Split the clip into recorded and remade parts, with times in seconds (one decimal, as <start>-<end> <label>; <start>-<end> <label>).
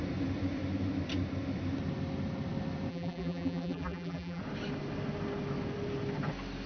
0.0-2.9 recorded; 2.9-4.4 remade; 4.4-6.7 recorded